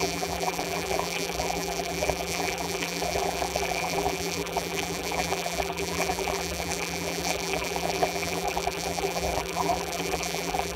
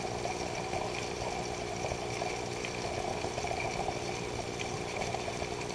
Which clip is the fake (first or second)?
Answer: first